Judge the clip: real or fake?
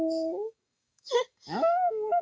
fake